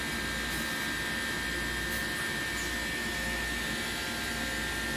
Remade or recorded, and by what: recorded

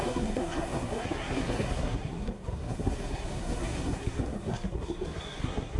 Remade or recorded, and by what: remade, codec, SNAC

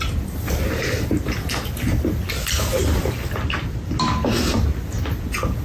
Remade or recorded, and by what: recorded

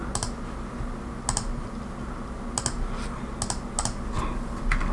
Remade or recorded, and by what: recorded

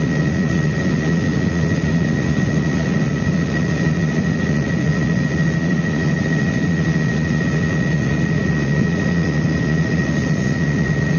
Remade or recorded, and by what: remade, vocoder, Vocos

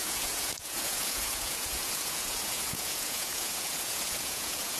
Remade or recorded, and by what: remade, vocoder, Vocos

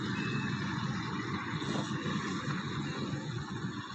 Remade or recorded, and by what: remade, vocoder, Vocos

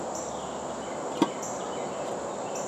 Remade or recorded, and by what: recorded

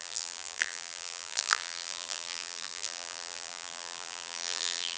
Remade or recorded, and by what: remade, vocoder, BigVGAN v2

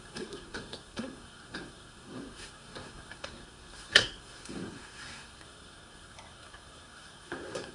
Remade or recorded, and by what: remade, codec, SNAC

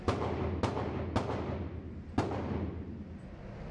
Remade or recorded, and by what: recorded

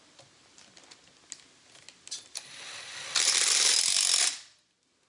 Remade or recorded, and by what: recorded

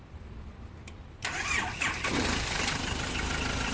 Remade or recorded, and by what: remade, vocoder, BigVGAN v2